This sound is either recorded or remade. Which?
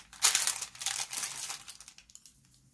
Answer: recorded